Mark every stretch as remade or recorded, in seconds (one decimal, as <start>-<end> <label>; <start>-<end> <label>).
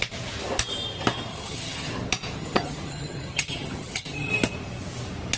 0.0-1.3 recorded; 1.3-1.9 remade; 1.9-2.4 recorded; 2.4-4.3 remade; 4.3-5.4 recorded